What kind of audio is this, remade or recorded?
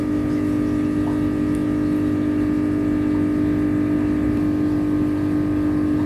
recorded